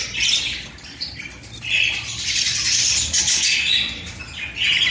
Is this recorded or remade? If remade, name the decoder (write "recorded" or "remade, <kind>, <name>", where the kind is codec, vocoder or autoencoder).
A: recorded